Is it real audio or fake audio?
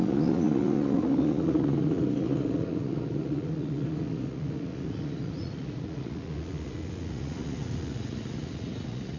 fake